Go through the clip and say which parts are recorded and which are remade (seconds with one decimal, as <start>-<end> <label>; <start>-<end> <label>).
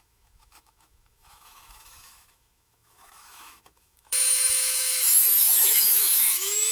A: 0.0-6.7 remade